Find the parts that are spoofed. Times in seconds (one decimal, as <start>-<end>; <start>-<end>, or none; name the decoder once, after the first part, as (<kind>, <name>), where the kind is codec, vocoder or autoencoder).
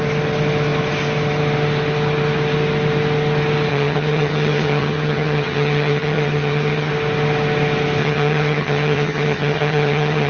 3.7-6.9 (vocoder, HiFi-GAN); 8.0-10.3